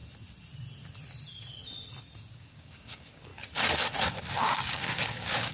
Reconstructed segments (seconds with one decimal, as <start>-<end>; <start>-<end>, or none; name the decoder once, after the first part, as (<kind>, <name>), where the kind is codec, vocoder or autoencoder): 2.3-3.3 (codec, DAC); 4.2-5.5